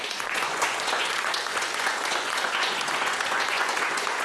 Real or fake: fake